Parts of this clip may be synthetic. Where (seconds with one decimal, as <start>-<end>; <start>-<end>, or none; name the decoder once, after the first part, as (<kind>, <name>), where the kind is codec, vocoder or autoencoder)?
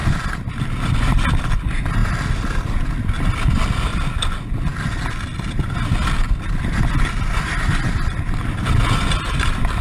none